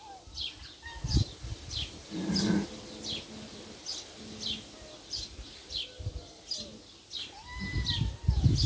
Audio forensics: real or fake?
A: real